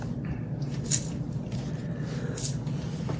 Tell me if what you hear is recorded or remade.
remade